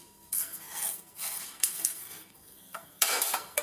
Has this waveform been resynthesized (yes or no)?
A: yes